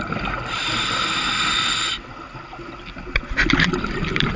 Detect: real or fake real